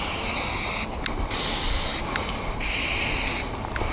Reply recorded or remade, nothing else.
recorded